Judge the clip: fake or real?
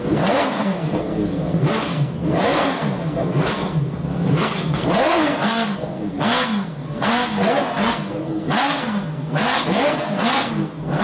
fake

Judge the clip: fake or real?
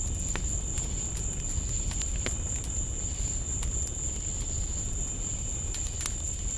real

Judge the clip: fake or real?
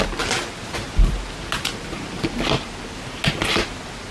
real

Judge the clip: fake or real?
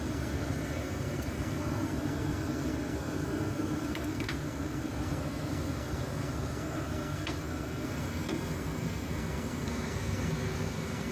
fake